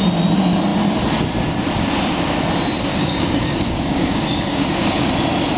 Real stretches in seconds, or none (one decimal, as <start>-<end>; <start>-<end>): 0.0-2.9; 5.1-5.6